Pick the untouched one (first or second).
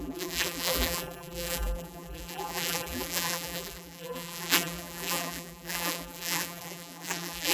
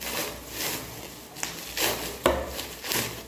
second